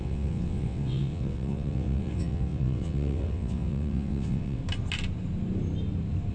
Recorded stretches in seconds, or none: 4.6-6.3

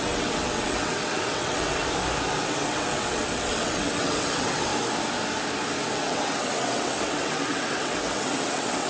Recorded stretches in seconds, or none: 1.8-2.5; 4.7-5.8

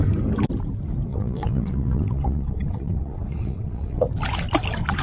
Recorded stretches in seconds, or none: 0.0-1.1; 4.1-5.0

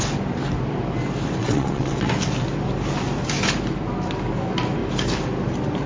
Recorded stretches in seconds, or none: 0.0-1.4; 2.1-5.9